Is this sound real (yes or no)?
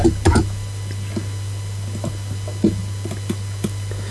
yes